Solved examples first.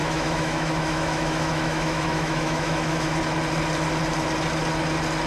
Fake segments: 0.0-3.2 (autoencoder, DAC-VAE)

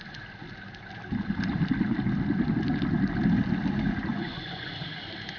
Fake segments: 4.1-4.7 (vocoder, Vocos)

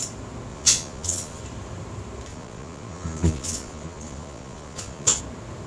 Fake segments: 0.5-1.4 (vocoder, Vocos); 2.3-5.2